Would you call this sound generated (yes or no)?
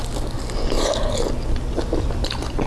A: no